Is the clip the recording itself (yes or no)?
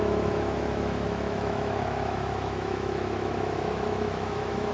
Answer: no